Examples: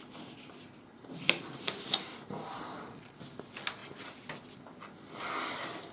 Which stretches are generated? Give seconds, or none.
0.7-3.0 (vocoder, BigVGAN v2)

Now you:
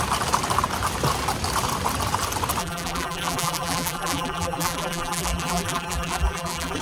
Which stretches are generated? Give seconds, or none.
2.6-6.8 (vocoder, BigVGAN v2)

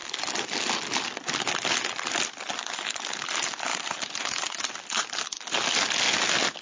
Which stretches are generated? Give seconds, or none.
3.7-5.4 (vocoder, BigVGAN v2)

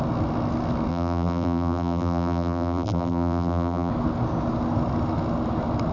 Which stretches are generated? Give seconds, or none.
0.9-3.9 (vocoder, BigVGAN v2)

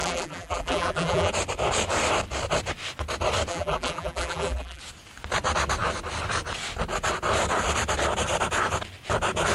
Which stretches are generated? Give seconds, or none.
0.0-1.3 (vocoder, BigVGAN v2); 3.5-4.8

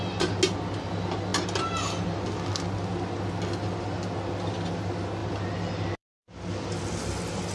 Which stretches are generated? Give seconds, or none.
5.2-6.8 (vocoder, BigVGAN v2)

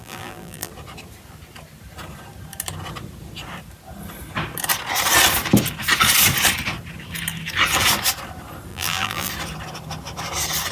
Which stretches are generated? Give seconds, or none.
0.0-0.7 (vocoder, BigVGAN v2); 8.7-9.3